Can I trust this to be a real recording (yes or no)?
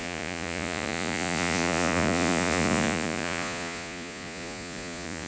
no